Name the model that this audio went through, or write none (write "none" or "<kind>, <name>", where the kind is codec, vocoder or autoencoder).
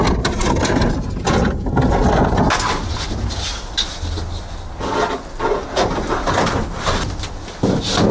none